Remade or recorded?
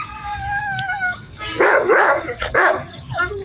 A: remade